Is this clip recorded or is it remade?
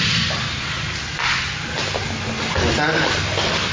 recorded